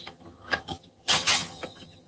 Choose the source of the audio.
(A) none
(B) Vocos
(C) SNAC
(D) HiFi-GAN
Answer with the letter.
D